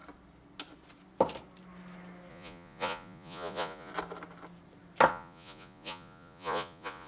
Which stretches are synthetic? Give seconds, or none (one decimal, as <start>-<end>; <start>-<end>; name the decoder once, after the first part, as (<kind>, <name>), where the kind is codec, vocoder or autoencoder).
2.3-3.9 (vocoder, Vocos); 5.1-7.1